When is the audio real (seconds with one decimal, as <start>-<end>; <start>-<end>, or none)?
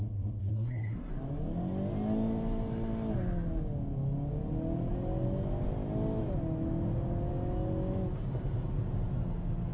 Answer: 0.0-0.4; 1.1-9.7